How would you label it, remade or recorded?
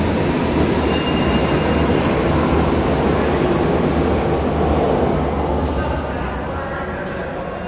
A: recorded